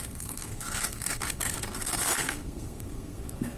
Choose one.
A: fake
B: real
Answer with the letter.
A